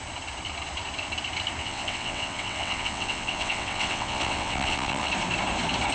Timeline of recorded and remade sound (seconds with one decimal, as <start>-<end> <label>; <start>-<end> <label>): 0.0-1.6 recorded; 1.6-5.1 remade; 5.1-5.9 recorded